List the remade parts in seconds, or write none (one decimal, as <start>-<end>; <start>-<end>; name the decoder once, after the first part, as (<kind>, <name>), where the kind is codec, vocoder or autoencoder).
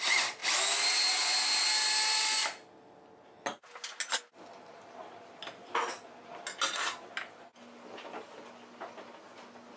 none